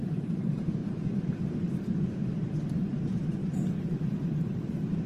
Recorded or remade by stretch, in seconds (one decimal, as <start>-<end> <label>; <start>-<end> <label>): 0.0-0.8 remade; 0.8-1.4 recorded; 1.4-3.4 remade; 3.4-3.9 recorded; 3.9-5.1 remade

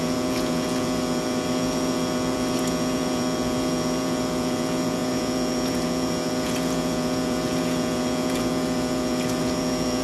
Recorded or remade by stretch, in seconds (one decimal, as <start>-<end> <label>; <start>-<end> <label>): 0.0-10.0 remade

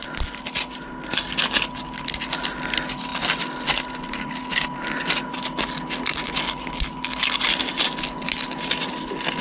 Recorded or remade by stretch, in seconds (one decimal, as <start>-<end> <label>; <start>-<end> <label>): 0.0-9.4 recorded

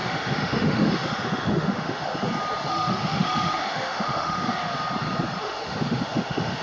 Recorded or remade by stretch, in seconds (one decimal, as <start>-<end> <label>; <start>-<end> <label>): 0.0-2.1 remade; 2.1-2.7 recorded; 2.7-4.6 remade; 4.6-5.4 recorded; 5.4-6.6 remade